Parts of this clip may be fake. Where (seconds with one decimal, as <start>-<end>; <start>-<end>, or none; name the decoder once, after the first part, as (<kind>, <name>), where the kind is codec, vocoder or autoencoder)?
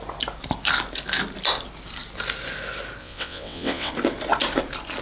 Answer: 3.0-3.9 (vocoder, WaveNeXt)